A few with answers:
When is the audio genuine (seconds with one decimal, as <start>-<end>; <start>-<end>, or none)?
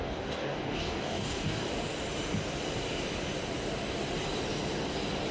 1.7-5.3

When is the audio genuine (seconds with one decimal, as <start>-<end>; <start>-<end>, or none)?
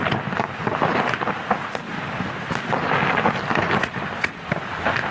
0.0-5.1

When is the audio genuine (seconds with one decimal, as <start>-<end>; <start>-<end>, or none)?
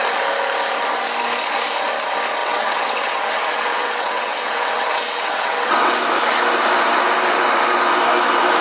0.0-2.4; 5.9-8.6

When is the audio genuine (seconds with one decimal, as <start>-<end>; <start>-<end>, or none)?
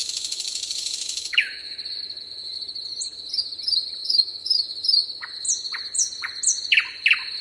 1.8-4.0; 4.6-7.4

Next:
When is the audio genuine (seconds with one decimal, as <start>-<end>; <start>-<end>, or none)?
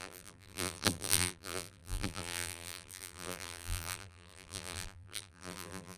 none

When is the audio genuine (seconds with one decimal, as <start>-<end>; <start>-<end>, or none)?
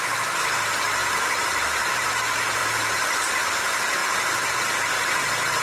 0.0-1.0; 2.2-5.6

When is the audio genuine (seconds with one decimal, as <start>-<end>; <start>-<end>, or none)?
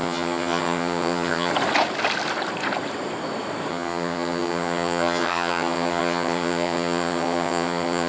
1.5-3.7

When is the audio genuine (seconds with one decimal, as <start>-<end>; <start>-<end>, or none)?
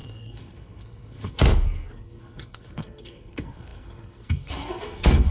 none